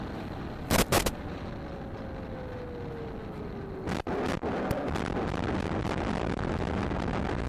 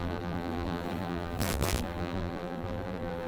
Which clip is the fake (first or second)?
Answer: second